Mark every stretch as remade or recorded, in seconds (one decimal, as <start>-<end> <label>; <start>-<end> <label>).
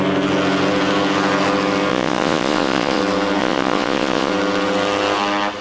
0.0-1.9 recorded; 1.9-3.0 remade; 3.0-3.4 recorded; 3.4-4.3 remade; 4.3-5.6 recorded